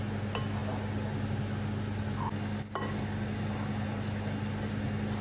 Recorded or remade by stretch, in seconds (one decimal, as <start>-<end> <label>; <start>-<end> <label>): 0.0-5.2 recorded

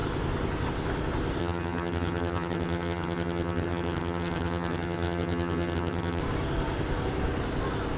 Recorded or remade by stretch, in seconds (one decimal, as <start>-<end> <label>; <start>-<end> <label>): 0.0-1.4 recorded; 1.4-6.2 remade; 6.2-8.0 recorded